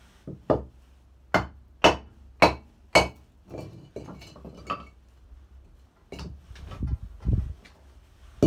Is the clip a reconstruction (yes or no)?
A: no